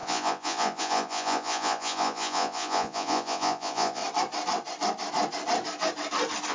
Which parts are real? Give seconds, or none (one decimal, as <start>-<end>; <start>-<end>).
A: 4.0-6.5